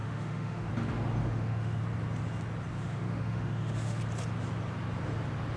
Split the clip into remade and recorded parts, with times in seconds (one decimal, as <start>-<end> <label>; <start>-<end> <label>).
0.0-0.7 remade; 0.7-1.2 recorded; 1.2-1.8 remade; 1.8-2.8 recorded; 2.8-4.0 remade; 4.0-5.6 recorded